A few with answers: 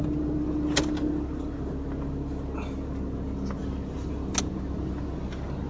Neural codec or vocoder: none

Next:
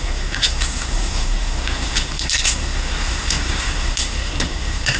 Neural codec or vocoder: codec, SNAC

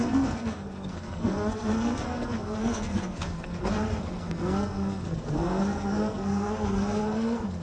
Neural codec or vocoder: codec, SNAC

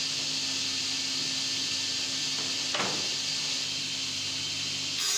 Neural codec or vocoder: none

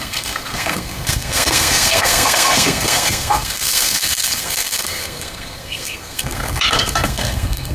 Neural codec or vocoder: codec, SNAC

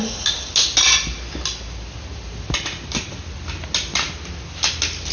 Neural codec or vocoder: none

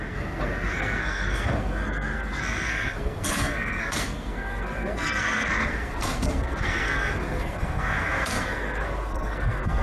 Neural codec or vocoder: codec, SNAC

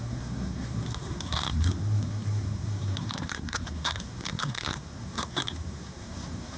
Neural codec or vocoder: codec, SNAC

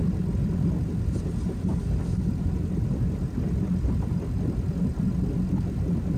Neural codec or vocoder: none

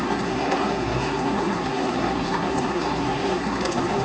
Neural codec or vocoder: codec, SNAC